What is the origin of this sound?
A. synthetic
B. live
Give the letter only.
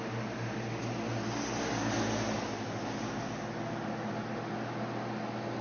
B